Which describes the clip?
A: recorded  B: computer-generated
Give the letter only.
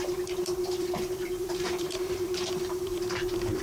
B